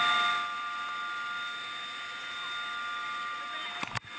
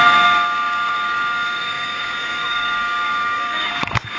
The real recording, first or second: first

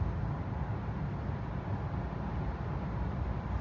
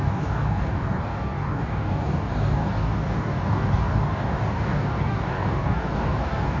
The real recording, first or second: first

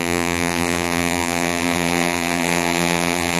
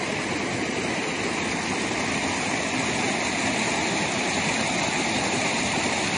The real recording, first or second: second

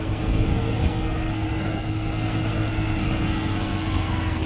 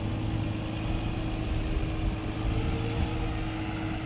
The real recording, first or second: second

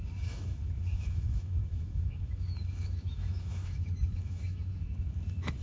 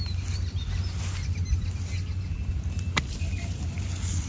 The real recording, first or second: second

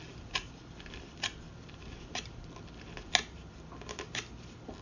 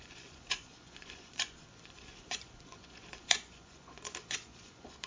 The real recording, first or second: first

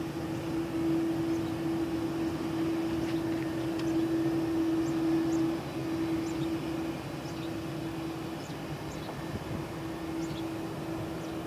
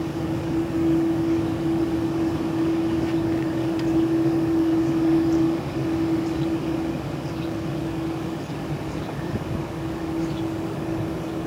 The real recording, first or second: first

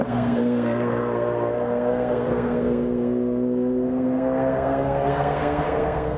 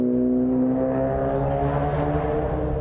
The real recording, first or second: second